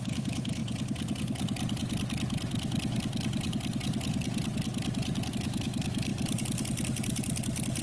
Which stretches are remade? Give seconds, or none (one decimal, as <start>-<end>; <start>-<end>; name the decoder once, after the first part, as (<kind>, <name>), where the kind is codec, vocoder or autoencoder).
0.0-0.6 (autoencoder, DAC-VAE); 5.3-6.1